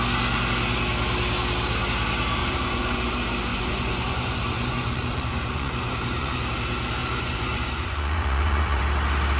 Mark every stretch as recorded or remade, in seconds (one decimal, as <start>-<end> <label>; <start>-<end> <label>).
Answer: 0.0-2.4 recorded; 2.4-3.1 remade; 3.1-3.5 recorded; 3.5-6.4 remade; 6.4-7.0 recorded; 7.0-8.8 remade; 8.8-9.4 recorded

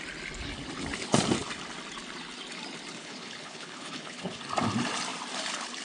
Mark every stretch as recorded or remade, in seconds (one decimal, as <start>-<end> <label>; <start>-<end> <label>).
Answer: 0.0-3.0 recorded; 3.0-4.4 remade; 4.4-5.8 recorded

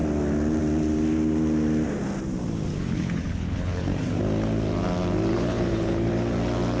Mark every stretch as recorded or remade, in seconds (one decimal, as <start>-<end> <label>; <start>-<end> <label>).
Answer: 0.0-2.7 recorded; 2.7-4.1 remade; 4.1-5.3 recorded; 5.3-6.1 remade; 6.1-6.8 recorded

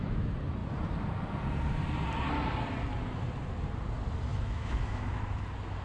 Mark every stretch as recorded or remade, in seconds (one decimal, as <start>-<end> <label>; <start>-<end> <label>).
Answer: 0.0-4.3 recorded; 4.3-5.2 remade; 5.2-5.8 recorded